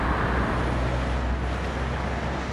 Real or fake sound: real